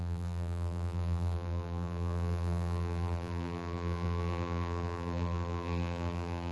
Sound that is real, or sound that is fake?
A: fake